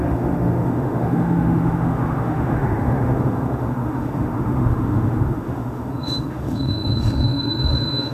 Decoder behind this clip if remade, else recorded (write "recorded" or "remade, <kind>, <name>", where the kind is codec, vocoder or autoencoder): remade, autoencoder, DAC-VAE